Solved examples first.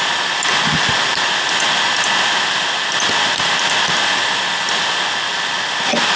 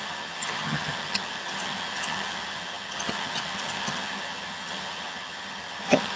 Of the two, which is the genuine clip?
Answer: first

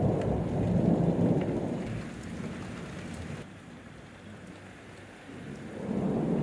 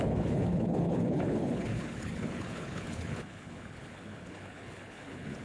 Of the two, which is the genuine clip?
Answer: first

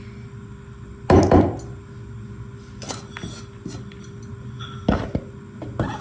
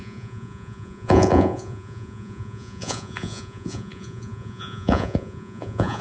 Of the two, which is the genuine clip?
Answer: first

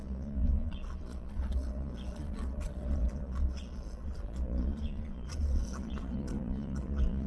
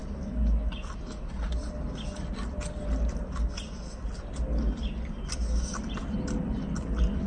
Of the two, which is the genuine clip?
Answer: second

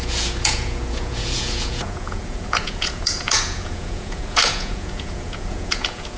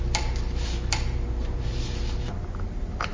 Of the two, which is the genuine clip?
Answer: second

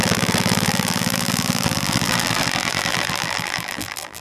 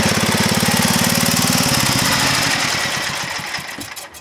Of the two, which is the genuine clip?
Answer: second